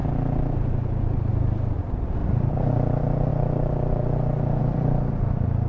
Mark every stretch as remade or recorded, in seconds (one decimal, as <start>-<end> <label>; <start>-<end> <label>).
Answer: 0.0-1.3 recorded; 1.3-2.2 remade; 2.2-2.7 recorded; 2.7-3.3 remade; 3.3-4.6 recorded; 4.6-5.7 remade